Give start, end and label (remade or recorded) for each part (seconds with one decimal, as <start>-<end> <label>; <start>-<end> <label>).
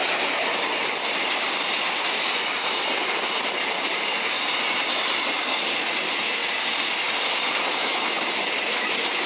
0.0-9.3 recorded